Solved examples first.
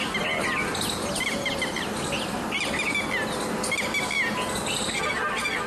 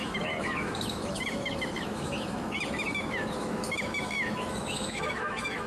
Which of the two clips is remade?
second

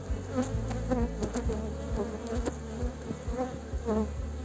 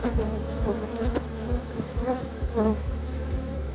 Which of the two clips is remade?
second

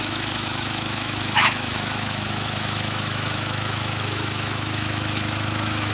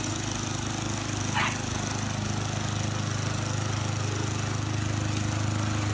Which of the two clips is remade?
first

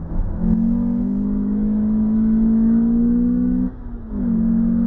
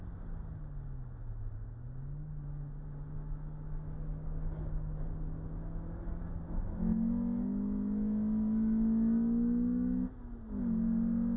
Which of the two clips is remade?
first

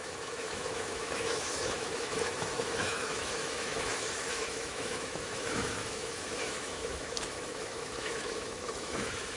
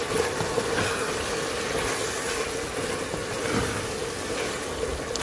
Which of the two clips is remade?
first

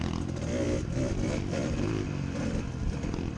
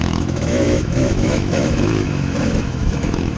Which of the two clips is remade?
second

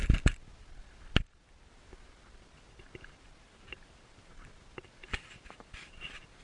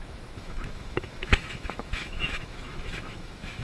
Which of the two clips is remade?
second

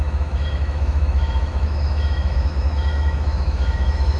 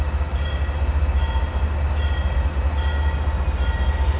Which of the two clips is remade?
first